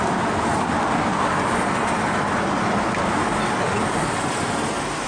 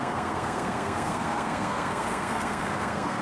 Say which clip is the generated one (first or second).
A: second